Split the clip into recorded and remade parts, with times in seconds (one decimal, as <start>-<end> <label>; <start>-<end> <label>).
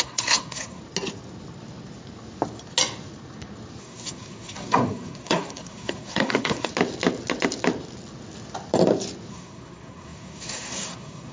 0.0-0.8 remade; 0.8-3.8 recorded; 3.8-6.7 remade; 6.7-9.3 recorded; 9.3-11.3 remade